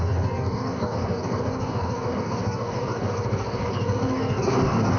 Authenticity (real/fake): fake